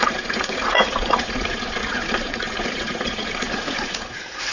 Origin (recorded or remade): remade